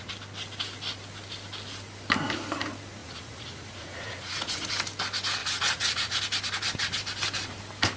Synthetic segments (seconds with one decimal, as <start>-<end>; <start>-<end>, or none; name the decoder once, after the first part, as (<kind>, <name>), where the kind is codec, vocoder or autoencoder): 3.0-4.7 (vocoder, Vocos); 5.4-6.2

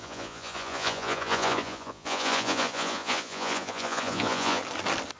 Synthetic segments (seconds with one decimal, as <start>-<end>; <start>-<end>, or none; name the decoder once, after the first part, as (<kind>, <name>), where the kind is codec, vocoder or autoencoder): 0.0-4.6 (vocoder, Vocos)

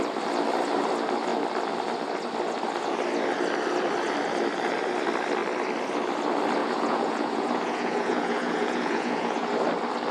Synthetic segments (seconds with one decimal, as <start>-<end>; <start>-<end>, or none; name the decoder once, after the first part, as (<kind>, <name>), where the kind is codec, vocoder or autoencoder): 6.6-9.5 (vocoder, Vocos)

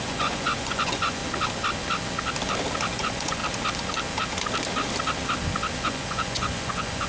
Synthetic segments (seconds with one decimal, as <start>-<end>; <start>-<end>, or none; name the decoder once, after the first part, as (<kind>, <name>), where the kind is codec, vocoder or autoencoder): 0.0-1.2 (vocoder, Vocos); 2.9-3.4; 5.8-7.1

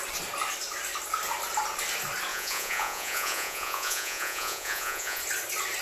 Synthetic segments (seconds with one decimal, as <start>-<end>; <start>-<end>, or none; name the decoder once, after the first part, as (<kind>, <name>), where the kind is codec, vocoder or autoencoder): 2.3-5.2 (vocoder, Vocos)

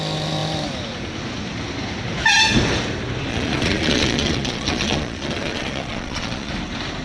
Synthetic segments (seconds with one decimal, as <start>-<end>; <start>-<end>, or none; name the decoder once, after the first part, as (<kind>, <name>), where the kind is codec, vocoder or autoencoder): 3.3-6.5 (vocoder, Vocos)